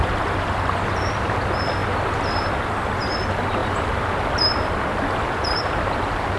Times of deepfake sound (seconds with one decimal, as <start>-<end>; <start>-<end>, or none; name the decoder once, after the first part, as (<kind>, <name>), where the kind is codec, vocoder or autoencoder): 0.0-6.4 (vocoder, BigVGAN v2)